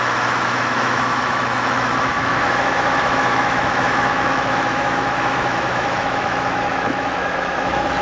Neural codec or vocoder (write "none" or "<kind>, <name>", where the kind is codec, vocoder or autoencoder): autoencoder, DAC-VAE